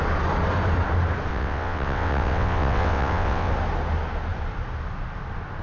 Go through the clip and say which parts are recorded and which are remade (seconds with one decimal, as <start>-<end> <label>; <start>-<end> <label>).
0.0-1.3 recorded; 1.3-3.5 remade; 3.5-5.6 recorded